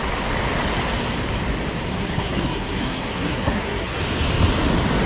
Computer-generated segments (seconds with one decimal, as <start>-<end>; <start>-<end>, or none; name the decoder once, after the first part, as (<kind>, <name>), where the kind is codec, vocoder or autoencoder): 1.9-4.0 (codec, SNAC)